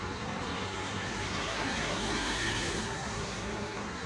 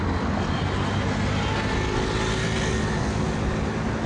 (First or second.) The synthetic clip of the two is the first